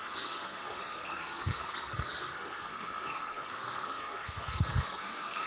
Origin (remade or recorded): remade